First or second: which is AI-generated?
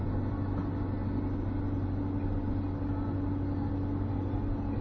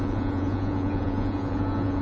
second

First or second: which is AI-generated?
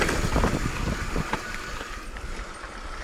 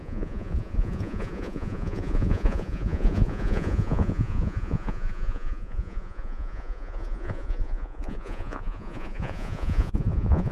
second